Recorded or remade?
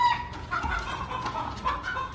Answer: remade